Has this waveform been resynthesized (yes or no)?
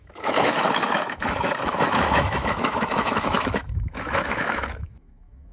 yes